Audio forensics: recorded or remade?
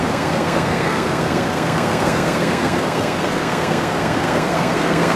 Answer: remade